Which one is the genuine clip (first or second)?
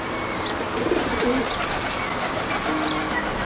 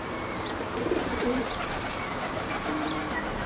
first